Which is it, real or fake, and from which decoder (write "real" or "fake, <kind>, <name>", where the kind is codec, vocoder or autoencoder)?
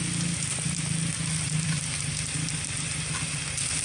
real